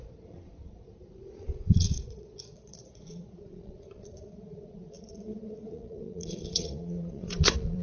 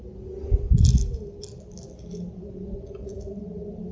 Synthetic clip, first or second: first